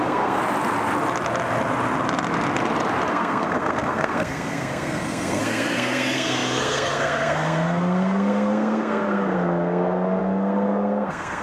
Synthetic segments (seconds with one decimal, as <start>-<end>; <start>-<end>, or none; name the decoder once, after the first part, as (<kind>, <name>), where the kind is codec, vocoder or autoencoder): 0.0-0.4 (codec, SNAC); 3.1-11.4